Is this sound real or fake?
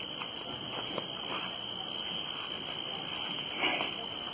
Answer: real